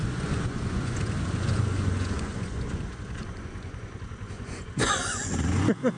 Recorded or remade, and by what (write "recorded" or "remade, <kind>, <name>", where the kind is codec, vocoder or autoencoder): remade, vocoder, Vocos